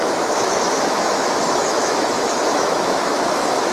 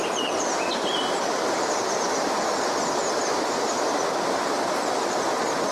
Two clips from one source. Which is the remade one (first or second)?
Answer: first